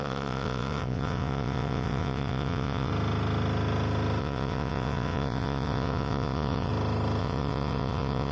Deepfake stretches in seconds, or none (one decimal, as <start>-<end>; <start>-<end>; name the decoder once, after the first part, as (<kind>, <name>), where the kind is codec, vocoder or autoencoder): 0.0-2.9 (vocoder, WaveNeXt); 4.2-6.7; 7.2-8.3